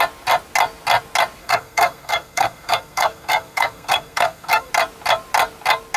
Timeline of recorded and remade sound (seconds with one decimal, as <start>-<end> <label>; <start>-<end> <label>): 0.0-1.4 recorded; 1.4-4.7 remade; 4.7-6.0 recorded